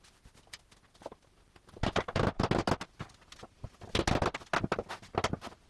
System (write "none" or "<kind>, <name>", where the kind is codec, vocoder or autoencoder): none